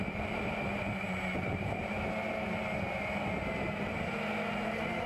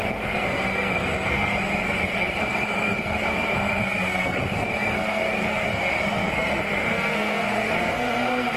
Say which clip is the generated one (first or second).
second